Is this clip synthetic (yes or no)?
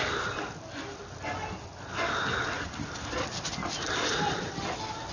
no